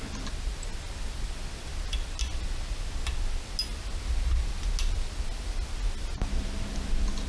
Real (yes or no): yes